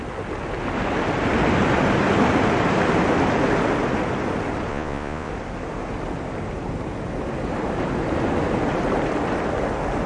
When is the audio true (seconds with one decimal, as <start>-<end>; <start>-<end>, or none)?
0.0-4.7; 5.3-10.1